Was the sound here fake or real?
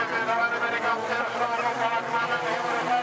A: real